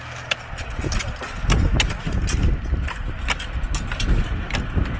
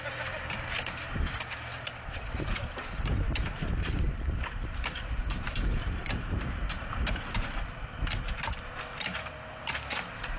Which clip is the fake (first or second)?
second